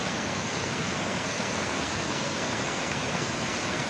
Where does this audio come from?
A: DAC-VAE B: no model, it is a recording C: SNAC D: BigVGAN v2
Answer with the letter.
C